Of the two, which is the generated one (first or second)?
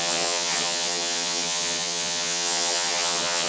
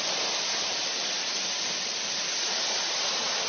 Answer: first